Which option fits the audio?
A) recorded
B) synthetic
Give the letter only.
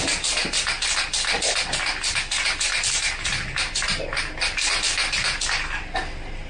A